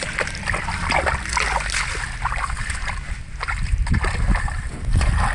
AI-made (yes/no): no